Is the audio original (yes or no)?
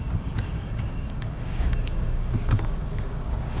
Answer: no